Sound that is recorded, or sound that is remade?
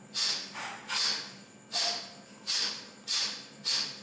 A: recorded